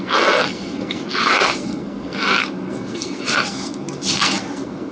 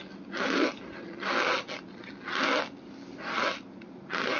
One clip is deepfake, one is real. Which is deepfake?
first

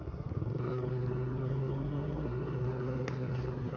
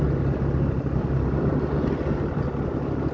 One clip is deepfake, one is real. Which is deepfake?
first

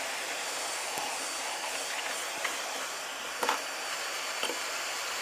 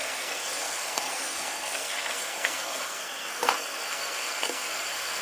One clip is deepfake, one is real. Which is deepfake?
second